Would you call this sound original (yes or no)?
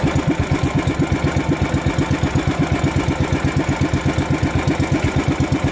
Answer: yes